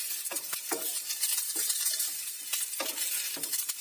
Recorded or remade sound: remade